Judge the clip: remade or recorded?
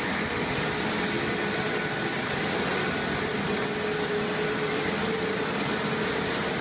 recorded